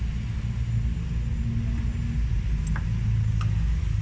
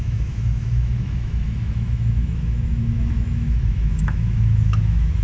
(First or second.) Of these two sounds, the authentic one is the first